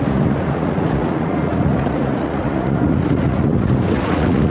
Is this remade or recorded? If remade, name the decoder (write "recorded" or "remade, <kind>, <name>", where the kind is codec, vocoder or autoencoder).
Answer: remade, vocoder, Vocos